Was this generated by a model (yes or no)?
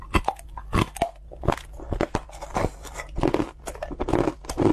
no